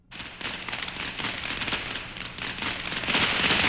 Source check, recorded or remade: recorded